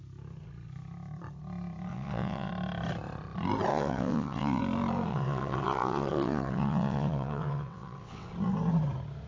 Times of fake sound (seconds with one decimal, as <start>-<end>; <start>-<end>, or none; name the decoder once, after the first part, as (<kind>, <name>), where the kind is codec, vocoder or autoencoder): 1.9-2.5 (vocoder, WaveNeXt); 3.7-4.6; 5.1-8.3